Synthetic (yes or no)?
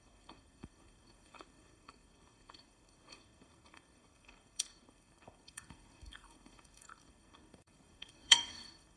yes